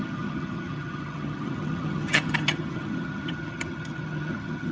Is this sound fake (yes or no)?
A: yes